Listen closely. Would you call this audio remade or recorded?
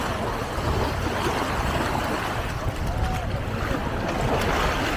recorded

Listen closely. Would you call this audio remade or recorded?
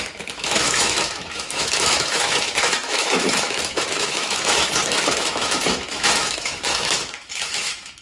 remade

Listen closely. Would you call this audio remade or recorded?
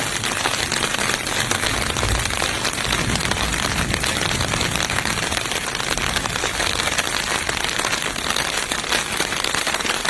recorded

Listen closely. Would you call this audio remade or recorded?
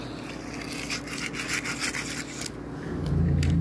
recorded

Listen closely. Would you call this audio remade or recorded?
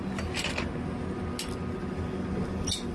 recorded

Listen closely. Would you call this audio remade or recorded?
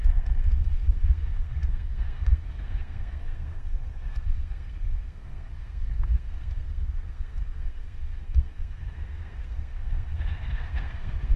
remade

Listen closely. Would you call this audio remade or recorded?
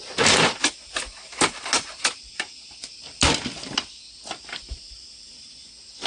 recorded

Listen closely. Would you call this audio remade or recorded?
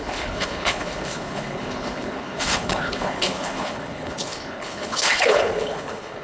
remade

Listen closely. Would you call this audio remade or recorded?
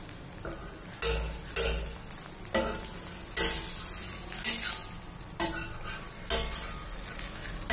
recorded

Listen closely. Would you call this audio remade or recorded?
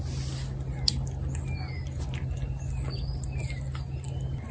recorded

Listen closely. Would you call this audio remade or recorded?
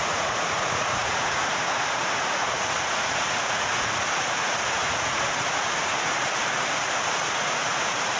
remade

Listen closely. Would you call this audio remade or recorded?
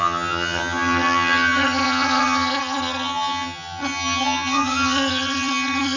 remade